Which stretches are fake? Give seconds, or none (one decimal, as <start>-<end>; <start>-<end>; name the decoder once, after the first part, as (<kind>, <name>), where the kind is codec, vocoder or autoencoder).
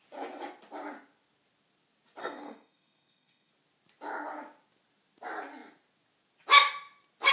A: 2.2-3.5 (codec, SNAC)